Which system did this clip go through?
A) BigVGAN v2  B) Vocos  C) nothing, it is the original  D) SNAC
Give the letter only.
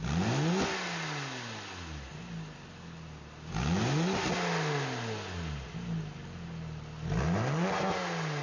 C